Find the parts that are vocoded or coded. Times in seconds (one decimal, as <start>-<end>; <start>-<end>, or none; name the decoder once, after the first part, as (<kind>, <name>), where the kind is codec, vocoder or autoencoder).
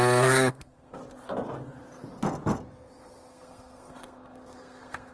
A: 0.0-1.0 (codec, SNAC); 3.3-5.1